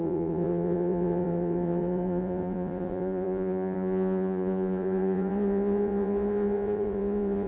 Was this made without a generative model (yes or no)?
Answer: no